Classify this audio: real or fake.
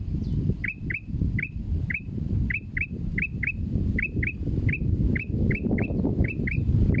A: real